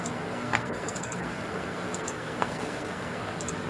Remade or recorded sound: remade